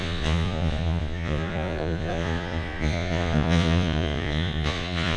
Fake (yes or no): yes